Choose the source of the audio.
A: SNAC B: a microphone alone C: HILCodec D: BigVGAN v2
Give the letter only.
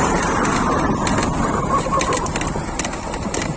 B